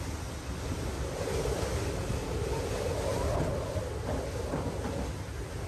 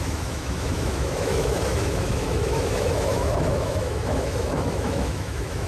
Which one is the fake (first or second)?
second